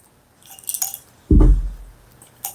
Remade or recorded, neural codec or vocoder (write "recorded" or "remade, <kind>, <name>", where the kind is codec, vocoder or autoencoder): recorded